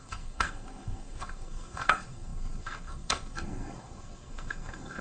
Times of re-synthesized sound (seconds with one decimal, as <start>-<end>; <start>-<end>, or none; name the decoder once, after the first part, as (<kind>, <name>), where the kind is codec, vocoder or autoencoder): 0.0-5.0 (codec, SNAC)

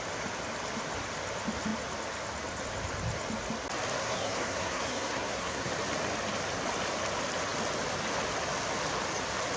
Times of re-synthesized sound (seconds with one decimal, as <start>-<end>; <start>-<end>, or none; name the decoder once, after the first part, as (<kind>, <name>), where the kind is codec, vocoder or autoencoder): 4.0-5.7 (codec, SNAC)

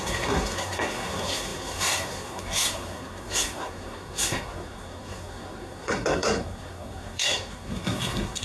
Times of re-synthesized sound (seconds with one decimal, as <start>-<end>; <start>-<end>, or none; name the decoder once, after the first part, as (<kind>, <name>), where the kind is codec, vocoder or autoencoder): 0.0-8.4 (codec, SNAC)